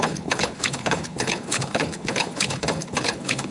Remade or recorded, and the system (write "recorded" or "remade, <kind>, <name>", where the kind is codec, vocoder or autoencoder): remade, codec, HILCodec